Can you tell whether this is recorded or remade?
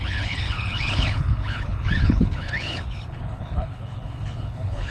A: remade